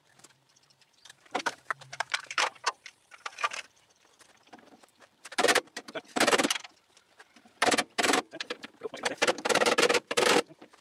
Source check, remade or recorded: remade